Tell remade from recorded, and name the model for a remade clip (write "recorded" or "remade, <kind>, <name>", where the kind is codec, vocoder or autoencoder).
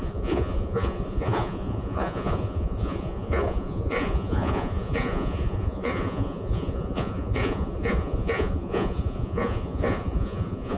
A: remade, vocoder, Vocos